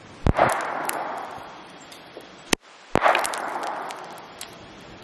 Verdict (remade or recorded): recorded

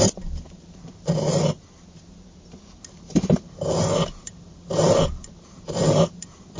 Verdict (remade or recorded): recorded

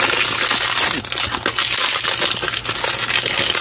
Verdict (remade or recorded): recorded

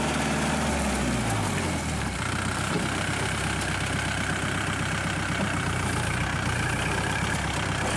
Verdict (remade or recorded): recorded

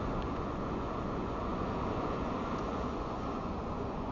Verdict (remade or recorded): remade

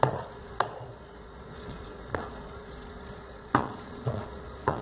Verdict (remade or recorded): remade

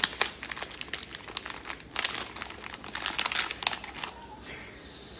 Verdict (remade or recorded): recorded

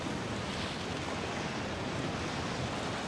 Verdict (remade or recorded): recorded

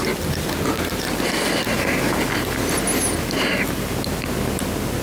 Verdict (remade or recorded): recorded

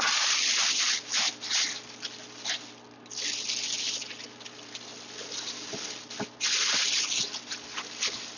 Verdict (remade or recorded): recorded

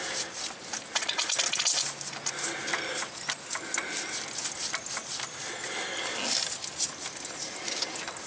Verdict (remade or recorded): recorded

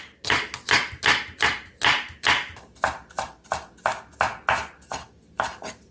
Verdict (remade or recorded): recorded